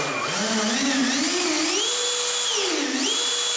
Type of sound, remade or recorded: recorded